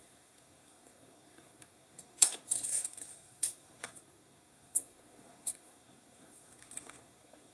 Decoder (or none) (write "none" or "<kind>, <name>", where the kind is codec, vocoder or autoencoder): codec, SNAC